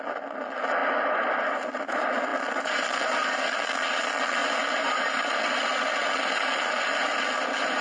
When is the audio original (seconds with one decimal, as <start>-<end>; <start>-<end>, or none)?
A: 0.0-7.8